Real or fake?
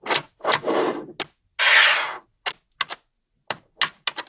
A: real